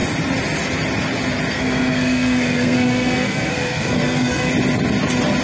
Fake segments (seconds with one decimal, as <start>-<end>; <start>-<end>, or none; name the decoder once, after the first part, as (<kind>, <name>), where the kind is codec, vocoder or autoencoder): 1.5-4.5 (codec, SNAC)